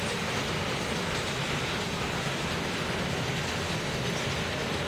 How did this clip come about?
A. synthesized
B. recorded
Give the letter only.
B